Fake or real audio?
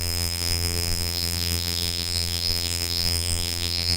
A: fake